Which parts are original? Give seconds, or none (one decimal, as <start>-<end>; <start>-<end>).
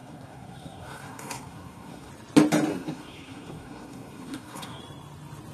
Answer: 2.1-2.7; 4.8-5.5